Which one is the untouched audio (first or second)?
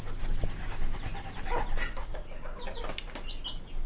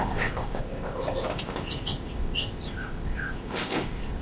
first